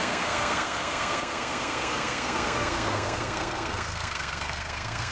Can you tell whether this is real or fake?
fake